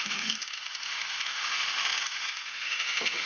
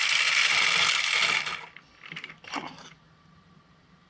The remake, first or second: first